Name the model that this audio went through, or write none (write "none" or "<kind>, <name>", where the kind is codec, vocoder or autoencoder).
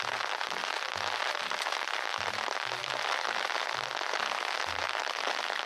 none